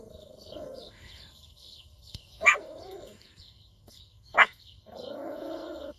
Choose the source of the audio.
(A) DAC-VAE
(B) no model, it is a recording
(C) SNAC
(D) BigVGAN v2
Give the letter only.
C